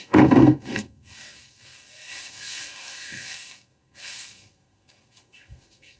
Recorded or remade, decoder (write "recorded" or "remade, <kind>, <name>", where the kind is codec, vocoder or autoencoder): remade, codec, SNAC